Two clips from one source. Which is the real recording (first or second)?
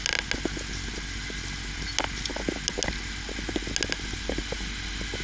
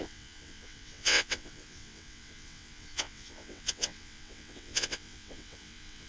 first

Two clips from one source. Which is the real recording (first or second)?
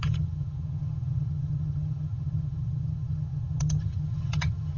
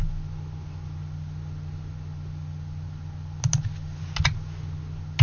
second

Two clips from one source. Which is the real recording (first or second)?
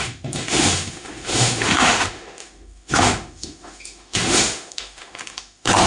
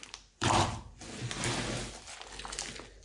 second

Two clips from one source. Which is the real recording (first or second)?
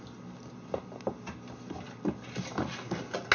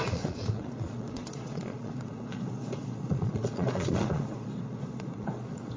first